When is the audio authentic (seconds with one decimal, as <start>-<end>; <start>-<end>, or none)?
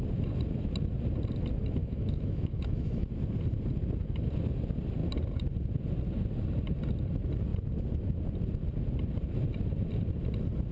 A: 0.0-1.8; 3.1-10.7